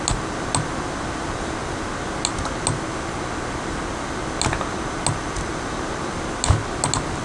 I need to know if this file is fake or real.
real